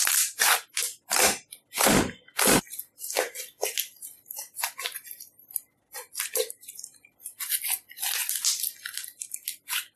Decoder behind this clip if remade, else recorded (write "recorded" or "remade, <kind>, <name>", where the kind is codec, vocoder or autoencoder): recorded